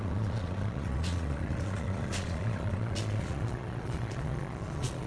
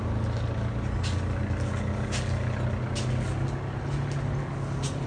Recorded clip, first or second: second